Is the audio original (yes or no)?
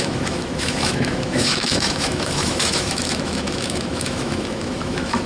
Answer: no